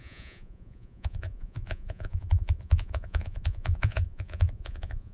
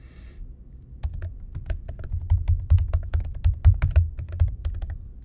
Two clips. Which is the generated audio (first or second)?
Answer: first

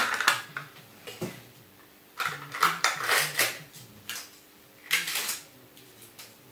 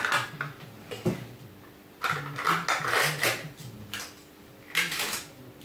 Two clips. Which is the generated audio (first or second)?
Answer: first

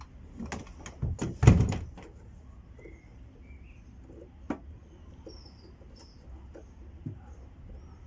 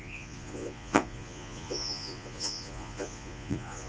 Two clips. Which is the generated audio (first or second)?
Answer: second